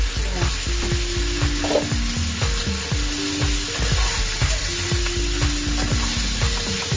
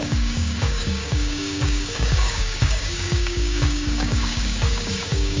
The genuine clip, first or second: first